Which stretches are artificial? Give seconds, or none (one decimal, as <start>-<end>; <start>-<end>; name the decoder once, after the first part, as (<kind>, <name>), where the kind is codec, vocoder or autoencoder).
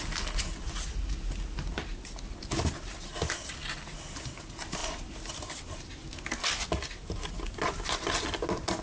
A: none